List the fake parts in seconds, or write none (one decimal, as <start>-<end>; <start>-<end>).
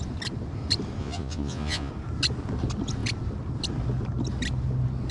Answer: 1.0-1.9